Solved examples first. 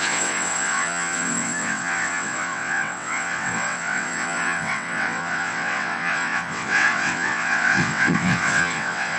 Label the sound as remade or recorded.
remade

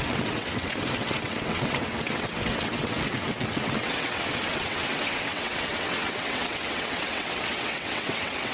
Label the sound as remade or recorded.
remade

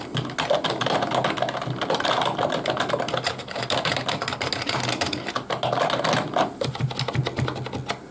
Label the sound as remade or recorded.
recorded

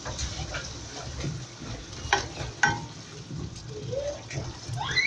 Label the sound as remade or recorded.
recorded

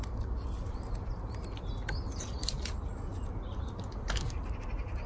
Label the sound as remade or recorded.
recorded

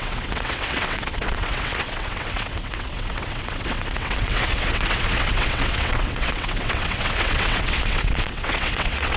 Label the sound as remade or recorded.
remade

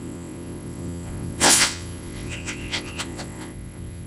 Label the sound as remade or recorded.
remade